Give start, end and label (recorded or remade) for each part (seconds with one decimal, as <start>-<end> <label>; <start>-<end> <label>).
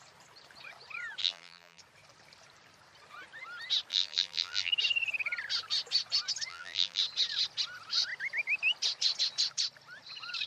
0.0-1.2 recorded; 1.2-1.8 remade; 1.8-3.9 recorded; 3.9-4.7 remade; 4.7-6.5 recorded; 6.5-7.0 remade; 7.0-10.5 recorded